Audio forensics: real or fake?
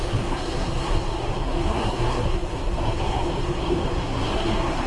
fake